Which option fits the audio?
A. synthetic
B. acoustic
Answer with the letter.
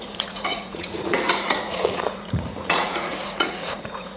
A